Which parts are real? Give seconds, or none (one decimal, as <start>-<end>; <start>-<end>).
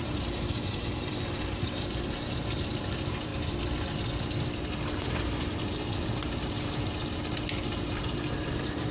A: 3.3-5.0; 7.0-8.0